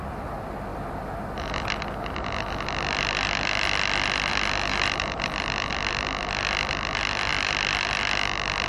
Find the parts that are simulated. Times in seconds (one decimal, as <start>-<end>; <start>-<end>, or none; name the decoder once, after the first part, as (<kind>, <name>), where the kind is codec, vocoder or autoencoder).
4.3-5.7 (vocoder, BigVGAN v2)